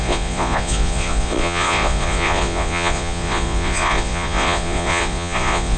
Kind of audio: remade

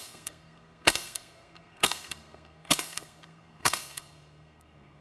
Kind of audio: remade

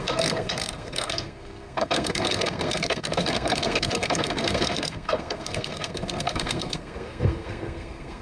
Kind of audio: remade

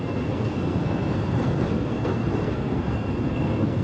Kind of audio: remade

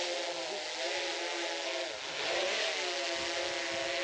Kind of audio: recorded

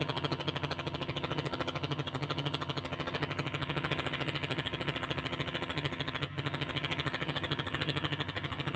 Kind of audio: remade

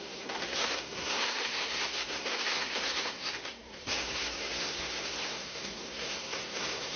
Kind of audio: remade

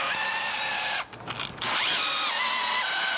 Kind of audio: recorded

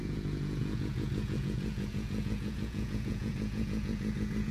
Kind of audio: remade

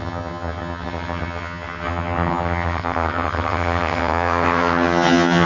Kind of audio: remade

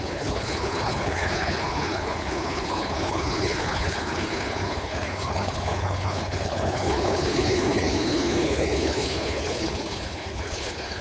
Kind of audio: remade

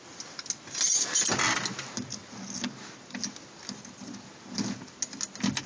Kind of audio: recorded